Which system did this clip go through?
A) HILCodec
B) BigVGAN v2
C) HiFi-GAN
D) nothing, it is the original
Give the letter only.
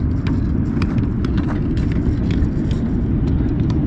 D